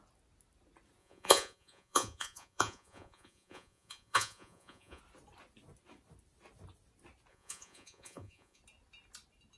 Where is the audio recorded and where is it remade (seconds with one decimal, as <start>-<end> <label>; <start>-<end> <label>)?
0.0-1.0 recorded; 1.0-5.0 remade; 5.0-7.3 recorded; 7.3-8.6 remade; 8.6-9.6 recorded